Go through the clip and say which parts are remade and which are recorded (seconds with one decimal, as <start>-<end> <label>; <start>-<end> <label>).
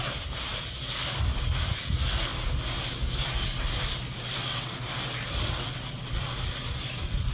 0.0-7.3 recorded